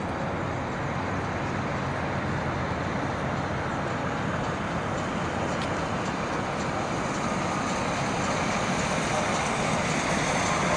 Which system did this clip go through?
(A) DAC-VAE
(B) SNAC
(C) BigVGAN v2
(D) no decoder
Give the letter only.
D